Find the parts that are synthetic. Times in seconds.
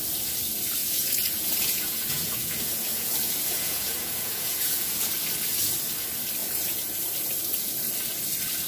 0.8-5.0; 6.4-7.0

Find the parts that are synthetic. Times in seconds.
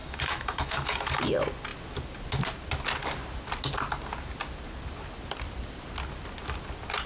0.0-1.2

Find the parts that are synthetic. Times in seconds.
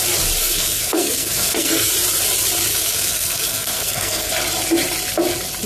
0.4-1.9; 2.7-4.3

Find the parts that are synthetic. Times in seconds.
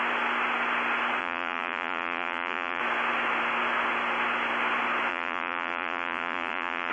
1.2-2.8; 5.1-6.9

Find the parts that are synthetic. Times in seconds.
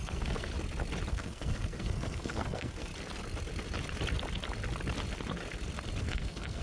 0.0-0.5; 1.1-2.9; 6.0-6.6